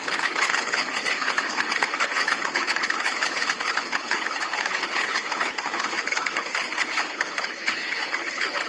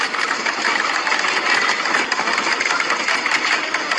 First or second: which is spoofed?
first